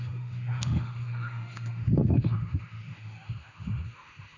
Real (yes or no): no